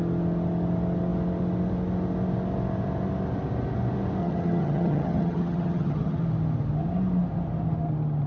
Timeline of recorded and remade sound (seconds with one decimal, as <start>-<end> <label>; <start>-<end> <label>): 0.0-4.2 recorded; 4.2-6.2 remade; 6.2-8.3 recorded

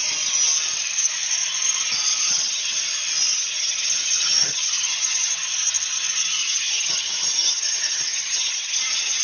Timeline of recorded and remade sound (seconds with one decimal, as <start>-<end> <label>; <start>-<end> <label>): 0.0-2.1 recorded; 2.1-2.7 remade; 2.7-3.3 recorded; 3.3-5.3 remade; 5.3-6.4 recorded; 6.4-9.2 remade

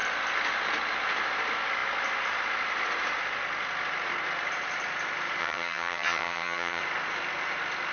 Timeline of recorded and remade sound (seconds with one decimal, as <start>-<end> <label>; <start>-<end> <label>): 0.0-5.4 recorded; 5.4-6.8 remade; 6.8-7.9 recorded

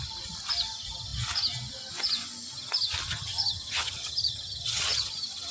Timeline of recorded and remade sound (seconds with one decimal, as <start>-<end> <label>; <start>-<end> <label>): 0.0-3.1 recorded; 3.1-5.1 remade; 5.1-5.5 recorded

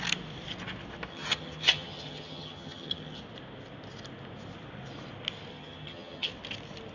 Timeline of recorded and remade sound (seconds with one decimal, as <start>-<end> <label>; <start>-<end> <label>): 0.0-1.1 recorded; 1.1-3.2 remade; 3.2-5.5 recorded; 5.5-6.3 remade; 6.3-6.9 recorded